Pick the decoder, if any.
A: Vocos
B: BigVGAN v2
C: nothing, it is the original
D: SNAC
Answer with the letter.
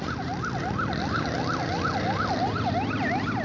C